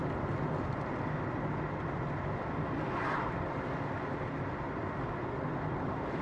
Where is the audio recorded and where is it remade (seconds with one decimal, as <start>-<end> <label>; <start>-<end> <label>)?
0.0-6.2 recorded